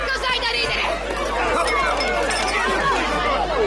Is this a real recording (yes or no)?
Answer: yes